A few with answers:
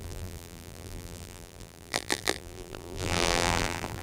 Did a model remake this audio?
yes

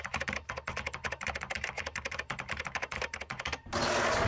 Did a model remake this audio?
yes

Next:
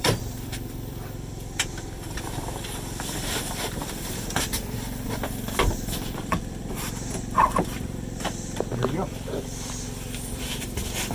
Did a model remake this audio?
yes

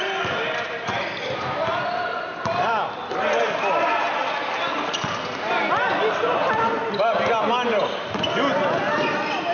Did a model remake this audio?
no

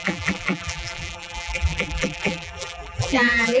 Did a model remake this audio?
yes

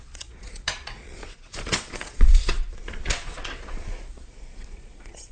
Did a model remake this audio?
yes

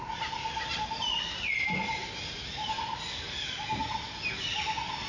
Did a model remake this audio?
no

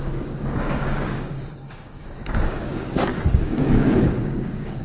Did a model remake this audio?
yes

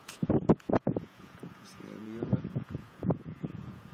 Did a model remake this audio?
yes